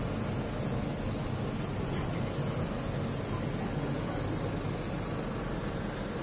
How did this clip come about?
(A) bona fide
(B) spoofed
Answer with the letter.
A